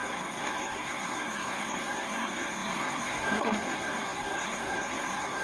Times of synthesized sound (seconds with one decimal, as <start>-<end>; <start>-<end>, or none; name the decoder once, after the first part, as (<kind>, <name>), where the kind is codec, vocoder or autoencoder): 0.0-5.4 (codec, SNAC)